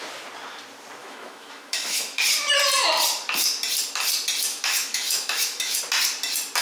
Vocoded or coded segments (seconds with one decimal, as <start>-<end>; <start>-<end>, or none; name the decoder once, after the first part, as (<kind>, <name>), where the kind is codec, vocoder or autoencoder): 1.0-2.2 (autoencoder, DAC-VAE); 4.5-5.8